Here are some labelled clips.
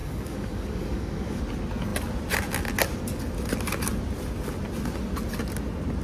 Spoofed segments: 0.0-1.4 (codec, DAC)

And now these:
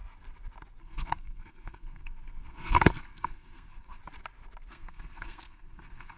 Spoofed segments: 0.8-4.0 (codec, SNAC); 4.7-6.2

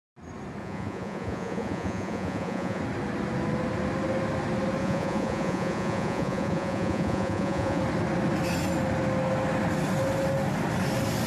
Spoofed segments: 0.6-2.8 (vocoder, Vocos); 4.8-7.8

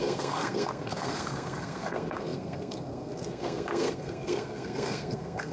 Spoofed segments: 0.0-5.5 (codec, SNAC)